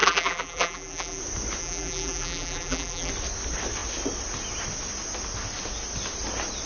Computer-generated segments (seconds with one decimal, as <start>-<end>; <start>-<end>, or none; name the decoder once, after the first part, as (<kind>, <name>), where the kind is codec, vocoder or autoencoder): 0.0-1.2 (vocoder, BigVGAN v2); 1.6-3.1